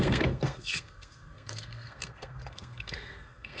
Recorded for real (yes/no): no